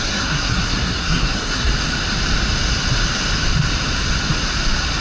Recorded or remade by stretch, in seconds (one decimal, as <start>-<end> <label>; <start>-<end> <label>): 0.0-1.7 remade; 1.7-5.0 recorded